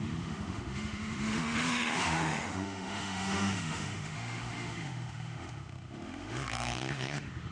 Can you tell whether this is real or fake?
fake